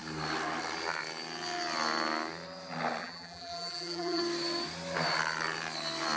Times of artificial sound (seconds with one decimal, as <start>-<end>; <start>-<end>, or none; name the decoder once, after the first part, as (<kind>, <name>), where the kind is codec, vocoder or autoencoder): 3.0-4.2 (vocoder, BigVGAN v2)